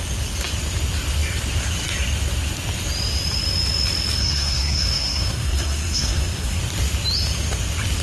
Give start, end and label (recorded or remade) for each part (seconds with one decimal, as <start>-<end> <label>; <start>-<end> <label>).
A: 0.0-4.2 recorded; 4.2-6.6 remade; 6.6-8.0 recorded